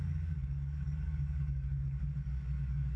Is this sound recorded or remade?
remade